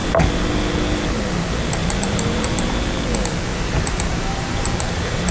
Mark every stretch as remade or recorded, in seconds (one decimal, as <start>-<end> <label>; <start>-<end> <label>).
0.0-1.8 recorded; 1.8-2.8 remade; 2.8-3.5 recorded; 3.5-5.3 remade